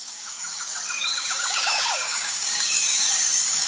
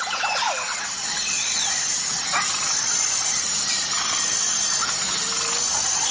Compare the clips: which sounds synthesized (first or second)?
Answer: first